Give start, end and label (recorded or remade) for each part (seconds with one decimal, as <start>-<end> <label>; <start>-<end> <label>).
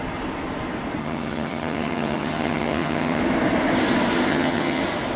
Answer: 0.0-1.0 recorded; 1.0-3.2 remade; 3.2-4.3 recorded; 4.3-4.8 remade; 4.8-5.2 recorded